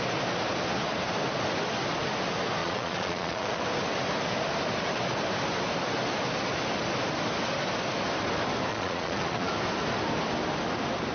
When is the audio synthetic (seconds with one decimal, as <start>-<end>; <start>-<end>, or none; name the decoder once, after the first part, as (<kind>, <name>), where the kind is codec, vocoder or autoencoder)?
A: 2.6-3.6 (vocoder, Vocos); 8.7-9.5